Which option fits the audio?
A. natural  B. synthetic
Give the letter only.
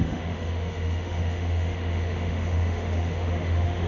B